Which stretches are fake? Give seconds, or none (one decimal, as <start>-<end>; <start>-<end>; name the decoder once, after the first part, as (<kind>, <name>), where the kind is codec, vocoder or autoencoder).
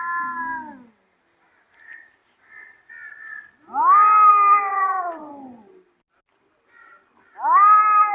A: 4.7-5.3 (vocoder, Vocos)